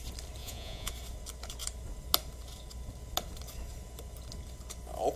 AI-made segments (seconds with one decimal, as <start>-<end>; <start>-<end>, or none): 0.4-0.9